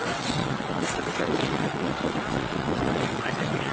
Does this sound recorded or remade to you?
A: remade